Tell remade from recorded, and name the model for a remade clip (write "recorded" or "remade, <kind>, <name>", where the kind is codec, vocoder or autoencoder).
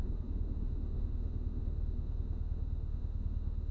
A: remade, autoencoder, DAC-VAE